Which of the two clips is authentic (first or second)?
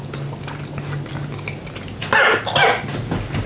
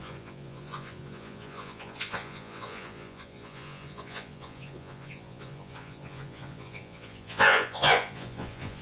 first